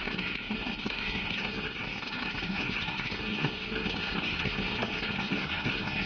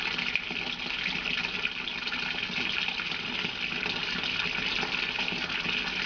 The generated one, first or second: first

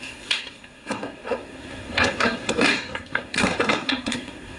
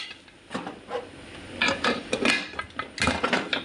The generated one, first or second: first